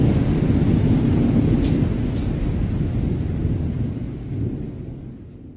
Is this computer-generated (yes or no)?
no